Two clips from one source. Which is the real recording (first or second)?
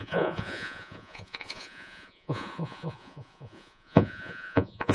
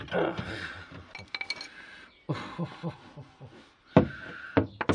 second